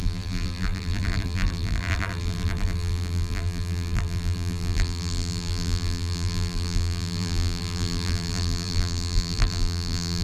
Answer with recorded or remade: remade